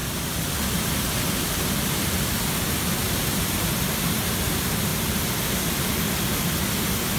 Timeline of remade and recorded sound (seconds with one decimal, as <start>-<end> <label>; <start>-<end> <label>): 0.0-7.2 recorded